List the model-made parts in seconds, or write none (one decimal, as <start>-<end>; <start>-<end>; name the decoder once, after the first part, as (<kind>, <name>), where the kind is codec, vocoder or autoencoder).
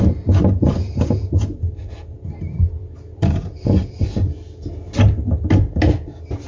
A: none